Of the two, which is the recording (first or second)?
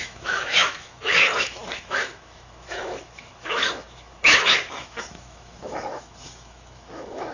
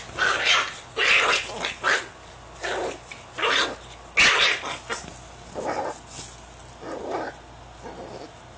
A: second